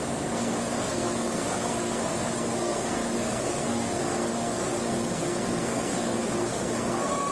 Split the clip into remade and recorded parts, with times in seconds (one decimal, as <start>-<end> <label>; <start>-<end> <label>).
0.0-7.3 remade